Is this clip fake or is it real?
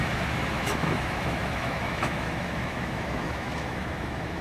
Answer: fake